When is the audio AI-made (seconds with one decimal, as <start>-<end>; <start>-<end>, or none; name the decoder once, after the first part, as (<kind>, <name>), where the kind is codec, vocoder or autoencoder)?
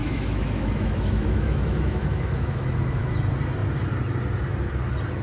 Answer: 0.0-3.1 (autoencoder, DAC-VAE)